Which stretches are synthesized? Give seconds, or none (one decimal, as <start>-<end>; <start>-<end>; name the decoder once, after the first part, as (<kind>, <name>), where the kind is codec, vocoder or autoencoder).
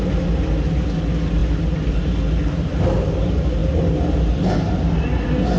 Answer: none